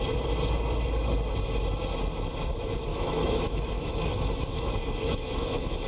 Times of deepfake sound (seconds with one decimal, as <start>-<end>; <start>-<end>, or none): 2.9-5.9